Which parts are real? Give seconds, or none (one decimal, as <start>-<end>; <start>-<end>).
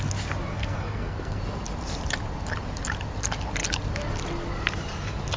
0.0-0.5; 1.4-5.4